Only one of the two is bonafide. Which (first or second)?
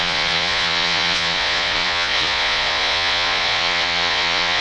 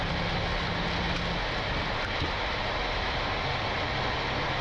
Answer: second